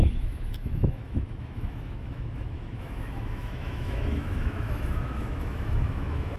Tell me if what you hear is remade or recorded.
remade